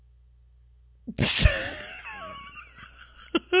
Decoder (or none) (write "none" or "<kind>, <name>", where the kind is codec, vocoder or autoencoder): none